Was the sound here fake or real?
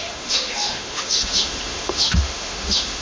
fake